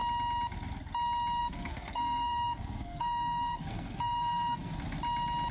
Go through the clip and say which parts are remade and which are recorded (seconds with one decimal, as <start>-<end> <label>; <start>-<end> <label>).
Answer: 0.0-1.4 recorded; 1.4-4.7 remade; 4.7-5.5 recorded